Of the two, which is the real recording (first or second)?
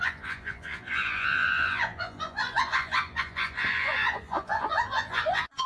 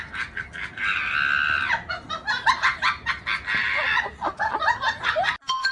second